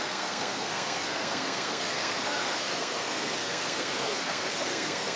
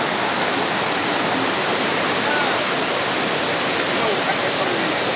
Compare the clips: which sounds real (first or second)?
second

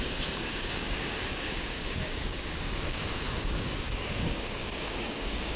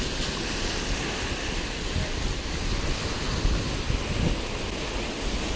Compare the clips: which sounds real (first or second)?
second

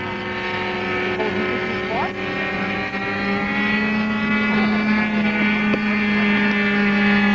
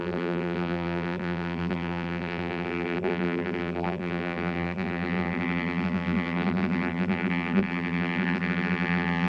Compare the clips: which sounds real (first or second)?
first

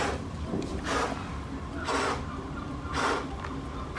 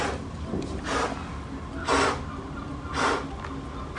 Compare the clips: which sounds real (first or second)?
second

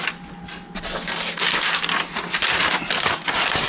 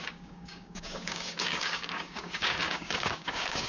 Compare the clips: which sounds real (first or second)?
first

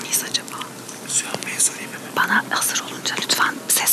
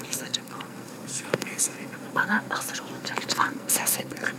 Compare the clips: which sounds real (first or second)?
first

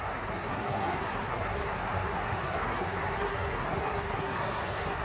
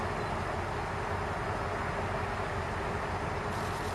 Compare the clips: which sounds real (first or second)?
second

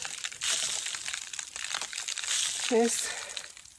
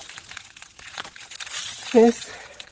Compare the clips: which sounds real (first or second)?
first